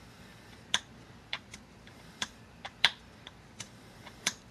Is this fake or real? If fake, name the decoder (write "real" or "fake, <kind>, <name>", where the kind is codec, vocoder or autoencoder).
fake, vocoder, BigVGAN v2